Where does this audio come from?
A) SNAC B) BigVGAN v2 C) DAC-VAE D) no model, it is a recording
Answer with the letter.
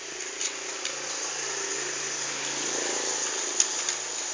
D